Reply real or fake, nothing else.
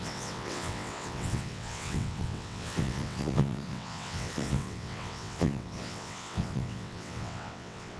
fake